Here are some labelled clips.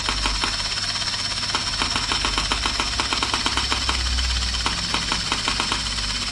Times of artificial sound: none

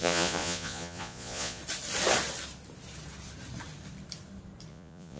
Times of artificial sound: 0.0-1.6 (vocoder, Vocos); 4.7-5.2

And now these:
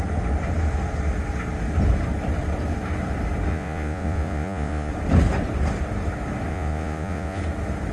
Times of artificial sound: 3.5-4.9 (vocoder, Vocos); 6.5-7.4

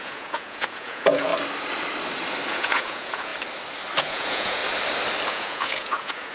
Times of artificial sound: 0.0-1.3 (vocoder, Vocos); 2.5-3.3; 4.0-4.6; 5.3-6.3

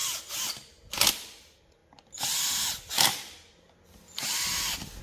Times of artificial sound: none

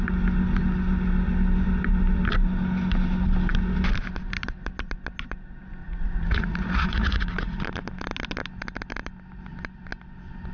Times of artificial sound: 5.8-7.6 (vocoder, Vocos)

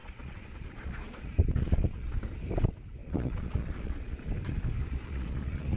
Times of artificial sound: 0.0-2.2 (vocoder, Vocos); 3.0-4.3; 4.8-5.8

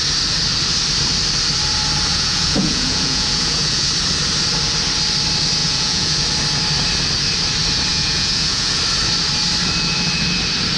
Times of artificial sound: 2.1-3.9 (vocoder, Vocos); 5.6-6.2; 7.9-8.8